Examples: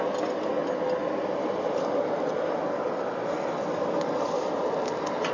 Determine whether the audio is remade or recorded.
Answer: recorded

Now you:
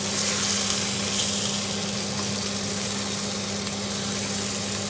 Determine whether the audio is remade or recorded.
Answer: recorded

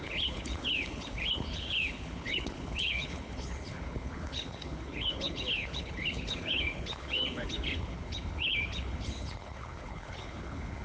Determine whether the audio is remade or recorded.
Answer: remade